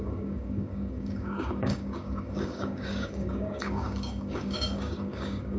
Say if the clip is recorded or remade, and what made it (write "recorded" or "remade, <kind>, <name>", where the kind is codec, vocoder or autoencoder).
remade, codec, DAC